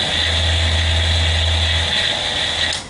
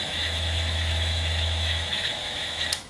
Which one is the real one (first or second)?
first